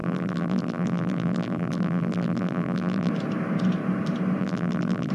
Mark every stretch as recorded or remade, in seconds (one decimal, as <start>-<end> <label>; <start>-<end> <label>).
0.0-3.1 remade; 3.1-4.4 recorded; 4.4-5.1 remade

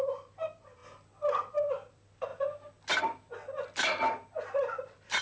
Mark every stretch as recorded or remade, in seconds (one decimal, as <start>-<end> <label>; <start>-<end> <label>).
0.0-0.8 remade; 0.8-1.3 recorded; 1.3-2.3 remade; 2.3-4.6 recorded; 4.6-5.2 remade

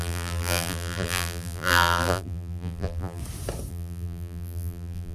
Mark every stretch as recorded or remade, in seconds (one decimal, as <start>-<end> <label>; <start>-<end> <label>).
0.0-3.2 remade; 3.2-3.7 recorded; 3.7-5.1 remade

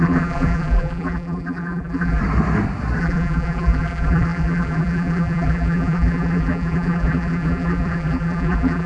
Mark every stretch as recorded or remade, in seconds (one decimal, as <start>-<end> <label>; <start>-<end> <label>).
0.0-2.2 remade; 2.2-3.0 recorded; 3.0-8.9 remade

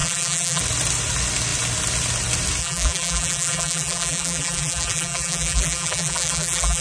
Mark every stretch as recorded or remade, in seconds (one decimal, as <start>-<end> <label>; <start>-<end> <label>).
0.0-0.6 remade; 0.6-2.6 recorded; 2.6-6.8 remade

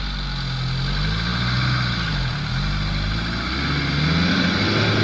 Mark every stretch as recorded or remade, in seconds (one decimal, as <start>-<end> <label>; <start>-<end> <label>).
0.0-5.0 recorded